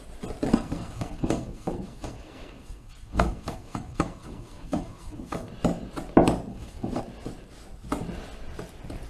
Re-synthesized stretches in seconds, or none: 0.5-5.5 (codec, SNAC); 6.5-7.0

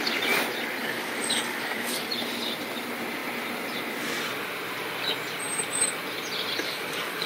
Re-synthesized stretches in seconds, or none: 0.8-2.1 (codec, DAC); 6.6-7.3